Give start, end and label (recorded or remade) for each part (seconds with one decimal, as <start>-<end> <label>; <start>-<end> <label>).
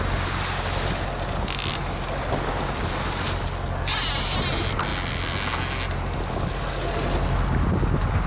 0.0-8.3 recorded